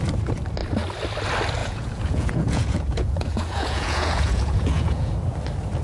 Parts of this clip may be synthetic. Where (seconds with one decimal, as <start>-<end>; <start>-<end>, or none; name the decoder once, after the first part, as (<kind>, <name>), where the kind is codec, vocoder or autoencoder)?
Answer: 1.6-5.1 (vocoder, Vocos)